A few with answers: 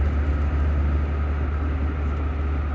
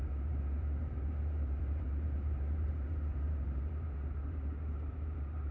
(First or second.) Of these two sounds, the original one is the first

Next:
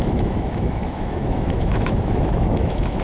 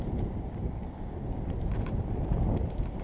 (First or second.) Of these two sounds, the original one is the second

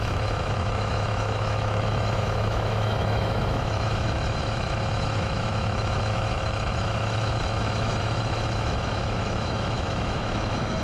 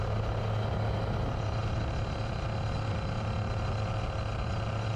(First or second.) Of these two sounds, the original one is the second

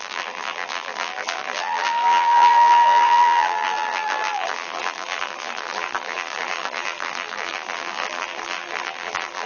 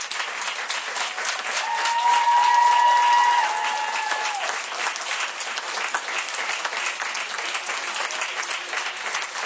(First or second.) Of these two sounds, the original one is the second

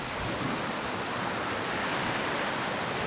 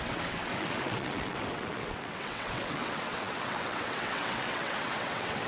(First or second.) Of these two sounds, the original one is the first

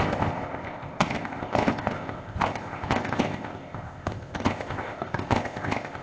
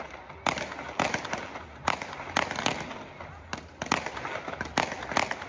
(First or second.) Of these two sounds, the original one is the second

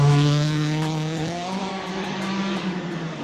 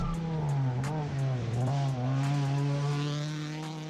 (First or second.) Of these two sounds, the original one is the second